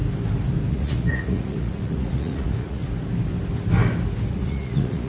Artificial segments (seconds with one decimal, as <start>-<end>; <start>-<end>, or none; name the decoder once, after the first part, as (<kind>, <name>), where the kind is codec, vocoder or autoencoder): 0.7-2.8 (vocoder, Vocos); 4.3-5.1